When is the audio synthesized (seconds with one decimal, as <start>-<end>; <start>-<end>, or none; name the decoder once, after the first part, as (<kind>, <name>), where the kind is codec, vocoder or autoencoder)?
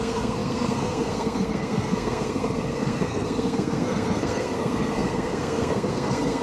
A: 0.0-6.4 (codec, SNAC)